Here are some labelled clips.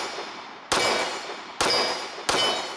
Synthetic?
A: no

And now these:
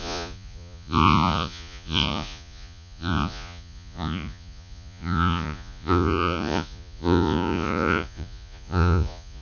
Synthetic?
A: yes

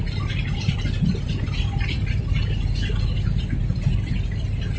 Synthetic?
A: no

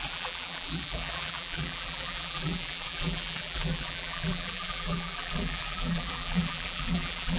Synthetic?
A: yes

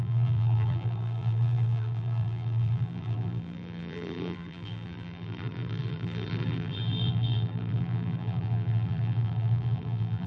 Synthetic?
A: yes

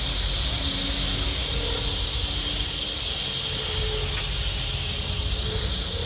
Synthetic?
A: no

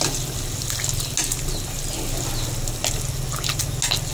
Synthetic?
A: no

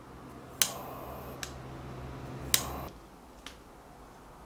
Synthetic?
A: no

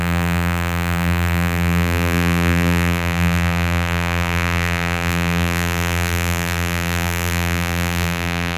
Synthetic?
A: yes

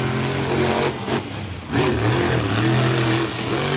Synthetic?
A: no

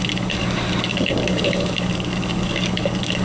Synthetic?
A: yes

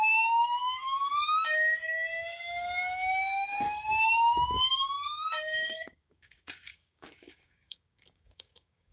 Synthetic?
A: yes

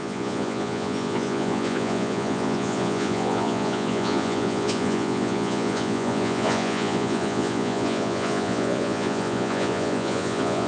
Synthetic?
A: yes